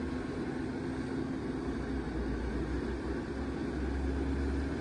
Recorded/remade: recorded